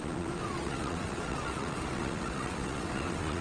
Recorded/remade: remade